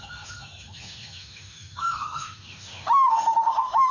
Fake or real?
fake